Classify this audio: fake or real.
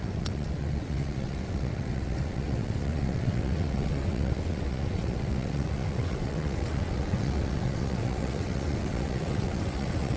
fake